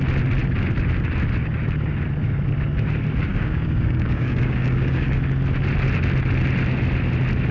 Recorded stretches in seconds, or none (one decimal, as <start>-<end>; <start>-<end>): 0.0-3.3; 5.2-7.5